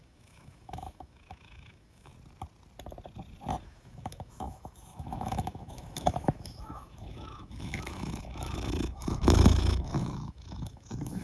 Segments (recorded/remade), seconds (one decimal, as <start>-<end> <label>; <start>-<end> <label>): 0.0-2.1 remade; 2.1-3.6 recorded; 3.6-11.2 remade